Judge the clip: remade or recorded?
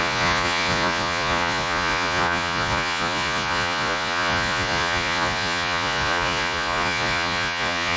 remade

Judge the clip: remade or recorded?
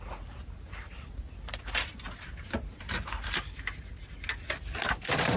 recorded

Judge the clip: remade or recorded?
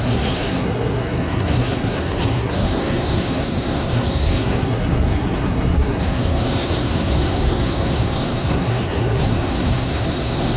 remade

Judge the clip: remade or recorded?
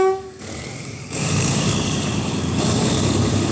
remade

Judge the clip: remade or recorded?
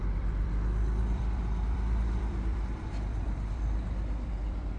remade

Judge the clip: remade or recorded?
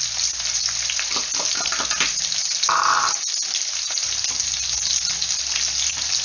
recorded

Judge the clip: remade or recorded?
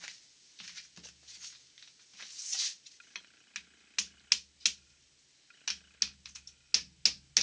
recorded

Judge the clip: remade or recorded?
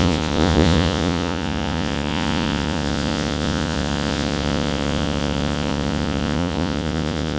remade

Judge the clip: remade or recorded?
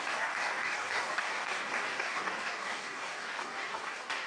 remade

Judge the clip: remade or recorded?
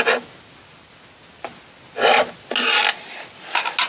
recorded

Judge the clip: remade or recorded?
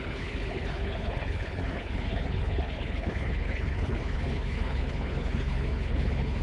remade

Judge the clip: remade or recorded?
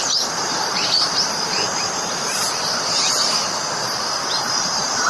remade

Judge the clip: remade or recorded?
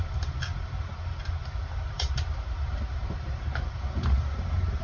remade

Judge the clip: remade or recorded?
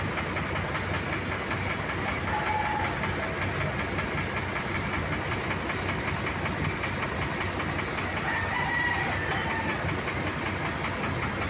recorded